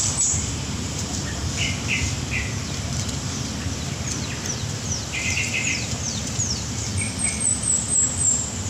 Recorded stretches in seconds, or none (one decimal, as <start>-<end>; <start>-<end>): 1.4-5.1; 6.9-7.8